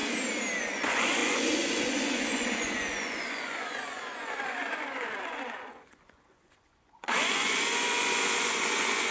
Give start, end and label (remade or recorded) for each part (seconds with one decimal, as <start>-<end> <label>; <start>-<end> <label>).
0.0-0.6 recorded; 0.6-9.1 remade